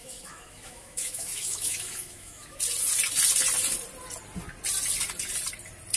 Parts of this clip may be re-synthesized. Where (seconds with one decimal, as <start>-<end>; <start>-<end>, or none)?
0.0-2.6